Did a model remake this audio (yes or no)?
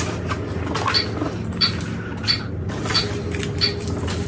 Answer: no